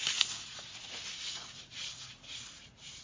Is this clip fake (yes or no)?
yes